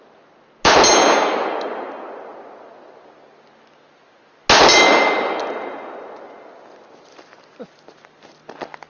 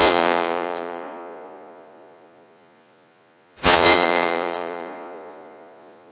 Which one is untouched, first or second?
first